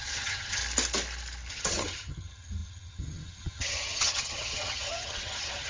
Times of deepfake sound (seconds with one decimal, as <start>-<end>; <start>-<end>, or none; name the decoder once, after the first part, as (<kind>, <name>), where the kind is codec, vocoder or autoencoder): 0.0-0.6 (vocoder, HiFi-GAN); 1.5-5.7